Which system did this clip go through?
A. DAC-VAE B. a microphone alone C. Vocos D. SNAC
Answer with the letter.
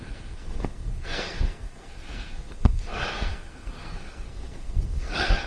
D